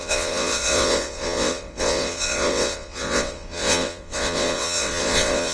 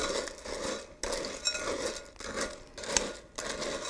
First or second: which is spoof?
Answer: first